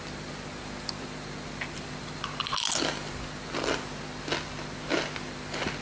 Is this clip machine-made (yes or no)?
no